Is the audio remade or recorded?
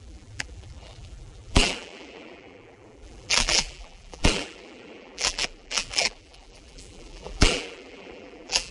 remade